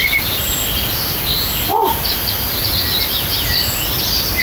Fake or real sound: real